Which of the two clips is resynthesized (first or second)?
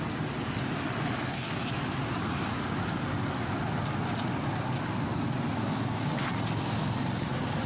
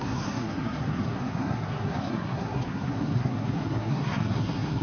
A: second